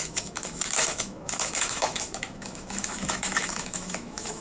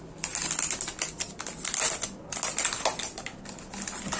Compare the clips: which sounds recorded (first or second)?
second